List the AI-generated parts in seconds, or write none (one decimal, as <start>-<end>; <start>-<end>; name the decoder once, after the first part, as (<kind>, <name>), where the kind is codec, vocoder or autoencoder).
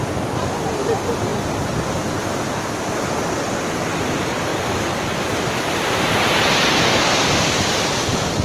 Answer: 4.5-7.1 (vocoder, BigVGAN v2)